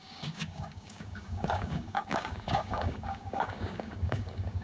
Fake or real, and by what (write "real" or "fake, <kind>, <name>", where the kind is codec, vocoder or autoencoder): fake, codec, DAC